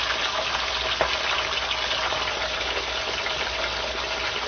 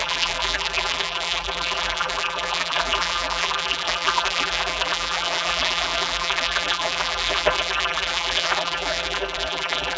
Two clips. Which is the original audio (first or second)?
first